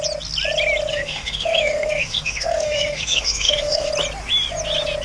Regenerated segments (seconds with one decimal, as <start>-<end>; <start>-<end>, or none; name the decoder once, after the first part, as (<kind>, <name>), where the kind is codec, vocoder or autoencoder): 0.9-3.9 (autoencoder, DAC-VAE)